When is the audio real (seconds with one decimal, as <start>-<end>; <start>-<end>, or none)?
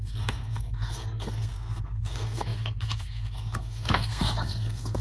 none